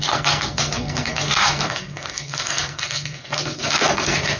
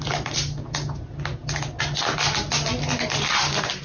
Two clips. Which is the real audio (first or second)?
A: second